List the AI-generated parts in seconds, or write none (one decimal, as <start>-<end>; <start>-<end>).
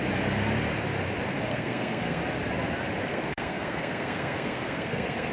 1.5-2.2; 3.1-5.3